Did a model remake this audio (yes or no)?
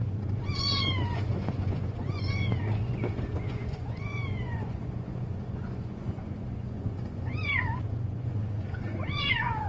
yes